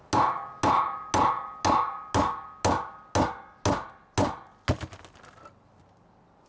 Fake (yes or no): no